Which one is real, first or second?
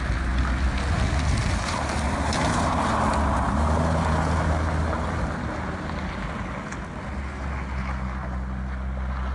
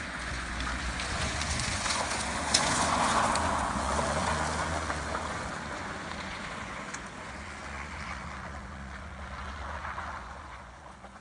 first